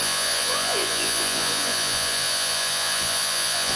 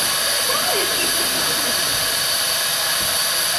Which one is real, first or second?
second